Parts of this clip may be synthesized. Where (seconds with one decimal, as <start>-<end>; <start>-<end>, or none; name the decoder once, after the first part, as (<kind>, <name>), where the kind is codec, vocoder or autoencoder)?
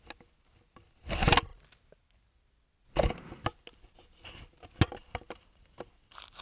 none